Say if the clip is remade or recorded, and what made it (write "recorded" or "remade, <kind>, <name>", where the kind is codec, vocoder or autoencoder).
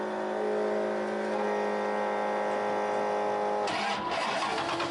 recorded